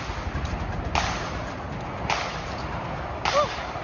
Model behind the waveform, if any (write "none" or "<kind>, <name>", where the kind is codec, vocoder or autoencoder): none